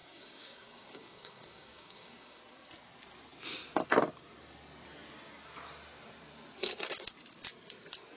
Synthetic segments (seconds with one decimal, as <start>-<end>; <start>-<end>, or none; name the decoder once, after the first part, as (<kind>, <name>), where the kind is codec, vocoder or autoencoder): 0.0-2.4 (codec, DAC)